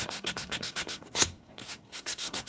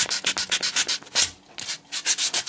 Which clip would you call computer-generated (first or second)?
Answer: first